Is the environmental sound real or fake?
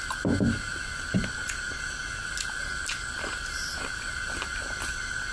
real